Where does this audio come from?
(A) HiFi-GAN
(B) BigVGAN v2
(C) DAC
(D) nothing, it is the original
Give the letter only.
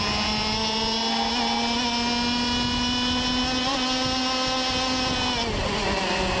D